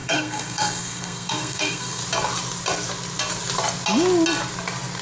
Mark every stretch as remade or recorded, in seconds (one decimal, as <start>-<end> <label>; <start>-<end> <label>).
0.0-2.0 remade; 2.0-5.0 recorded